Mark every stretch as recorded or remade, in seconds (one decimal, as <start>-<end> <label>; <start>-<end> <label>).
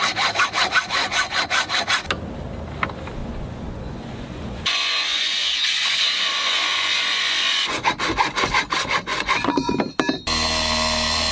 0.0-1.0 recorded; 1.0-1.7 remade; 1.7-3.2 recorded; 3.2-7.9 remade; 7.9-9.1 recorded; 9.1-9.7 remade; 9.7-11.3 recorded